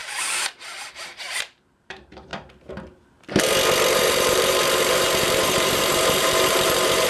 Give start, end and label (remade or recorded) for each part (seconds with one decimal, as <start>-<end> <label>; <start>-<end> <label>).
0.0-0.9 recorded; 0.9-2.3 remade; 2.3-3.9 recorded; 3.9-7.1 remade